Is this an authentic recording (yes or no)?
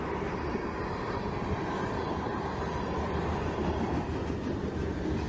yes